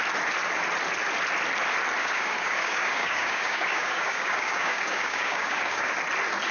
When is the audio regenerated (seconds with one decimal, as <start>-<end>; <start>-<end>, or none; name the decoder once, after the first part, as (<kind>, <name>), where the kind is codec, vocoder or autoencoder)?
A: 2.0-5.9 (codec, DAC)